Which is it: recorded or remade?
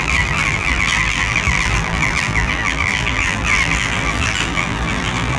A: remade